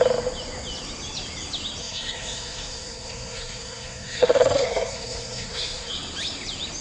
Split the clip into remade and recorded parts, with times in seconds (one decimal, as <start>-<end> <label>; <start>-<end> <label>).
0.0-1.8 recorded; 1.8-5.9 remade; 5.9-6.8 recorded